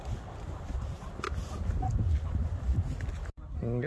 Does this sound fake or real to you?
real